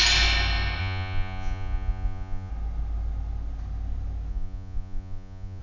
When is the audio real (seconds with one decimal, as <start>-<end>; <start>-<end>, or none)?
0.0-0.8; 2.5-4.3